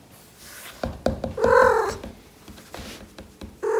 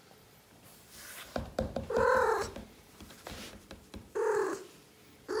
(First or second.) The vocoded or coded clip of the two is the second